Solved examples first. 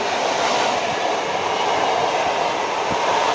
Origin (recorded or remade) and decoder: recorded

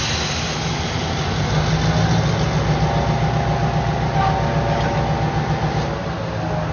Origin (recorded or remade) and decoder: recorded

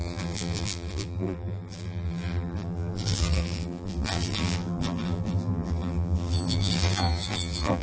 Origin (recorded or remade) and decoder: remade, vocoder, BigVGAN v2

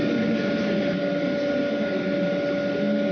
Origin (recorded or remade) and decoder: recorded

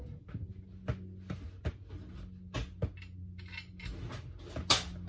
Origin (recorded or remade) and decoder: recorded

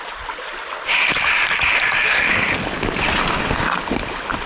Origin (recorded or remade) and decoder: recorded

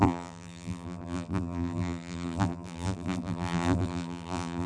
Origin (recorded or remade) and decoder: remade, vocoder, BigVGAN v2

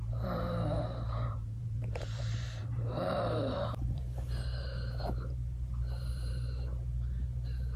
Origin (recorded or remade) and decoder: remade, vocoder, BigVGAN v2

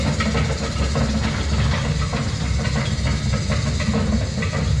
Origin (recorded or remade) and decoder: recorded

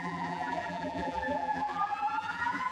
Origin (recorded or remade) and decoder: remade, vocoder, BigVGAN v2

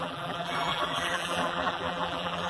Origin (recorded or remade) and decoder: remade, vocoder, BigVGAN v2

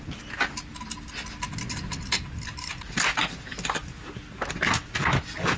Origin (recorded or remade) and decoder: recorded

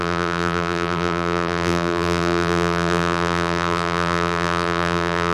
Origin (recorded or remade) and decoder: remade, vocoder, BigVGAN v2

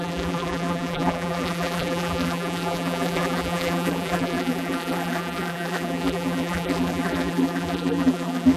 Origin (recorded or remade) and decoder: remade, vocoder, BigVGAN v2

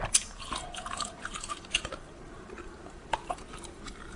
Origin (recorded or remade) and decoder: remade, vocoder, BigVGAN v2